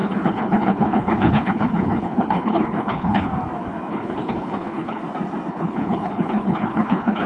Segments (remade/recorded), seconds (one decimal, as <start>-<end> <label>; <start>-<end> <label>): 0.0-3.3 remade; 3.3-3.9 recorded; 3.9-5.0 remade; 5.0-5.5 recorded; 5.5-7.3 remade